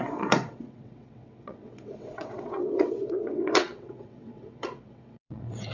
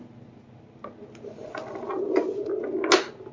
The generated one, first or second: first